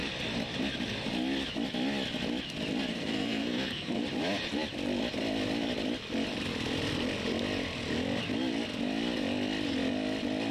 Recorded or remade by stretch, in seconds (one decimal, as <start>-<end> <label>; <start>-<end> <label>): 0.0-2.9 recorded; 2.9-4.0 remade; 4.0-10.5 recorded